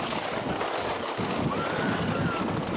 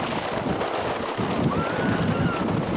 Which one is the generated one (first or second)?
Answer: first